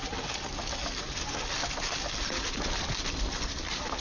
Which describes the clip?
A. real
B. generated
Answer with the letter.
A